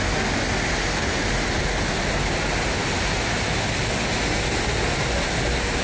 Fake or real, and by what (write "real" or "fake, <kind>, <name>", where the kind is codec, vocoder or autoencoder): real